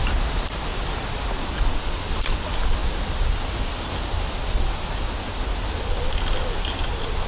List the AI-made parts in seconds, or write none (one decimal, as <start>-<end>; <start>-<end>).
none